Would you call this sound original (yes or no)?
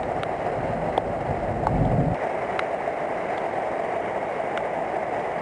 yes